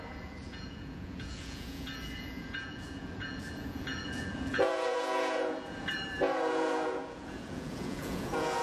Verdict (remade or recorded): remade